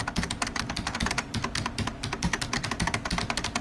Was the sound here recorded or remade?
recorded